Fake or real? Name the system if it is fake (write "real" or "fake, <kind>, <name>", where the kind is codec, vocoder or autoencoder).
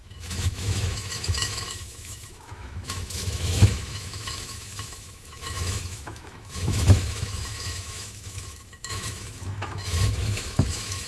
fake, autoencoder, DAC-VAE